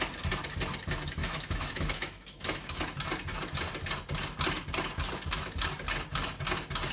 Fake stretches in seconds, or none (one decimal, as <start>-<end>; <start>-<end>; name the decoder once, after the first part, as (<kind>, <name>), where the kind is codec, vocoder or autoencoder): 1.2-2.8 (autoencoder, DAC-VAE)